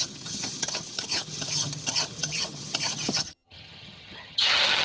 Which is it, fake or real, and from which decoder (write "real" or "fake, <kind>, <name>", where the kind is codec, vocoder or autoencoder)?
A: fake, vocoder, HiFi-GAN